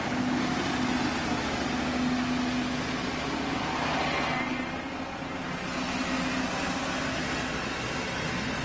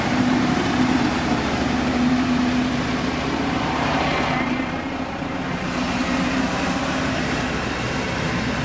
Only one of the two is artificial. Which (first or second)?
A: second